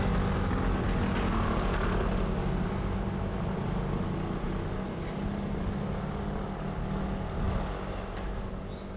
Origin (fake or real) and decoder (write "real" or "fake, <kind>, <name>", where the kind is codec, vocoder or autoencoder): real